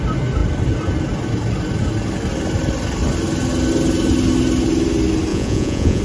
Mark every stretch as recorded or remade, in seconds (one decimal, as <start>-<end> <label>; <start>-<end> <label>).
0.0-5.3 recorded; 5.3-6.0 remade